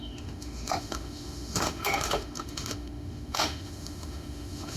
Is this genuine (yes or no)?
no